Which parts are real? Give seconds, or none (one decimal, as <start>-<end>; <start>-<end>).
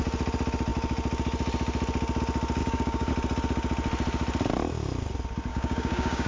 0.0-2.6; 3.1-5.5